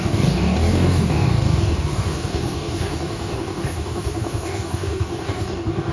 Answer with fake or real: fake